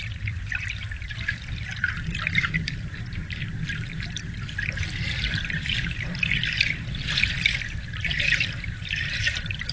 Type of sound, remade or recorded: remade